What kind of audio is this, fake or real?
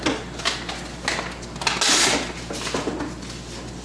real